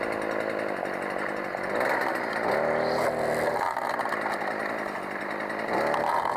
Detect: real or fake real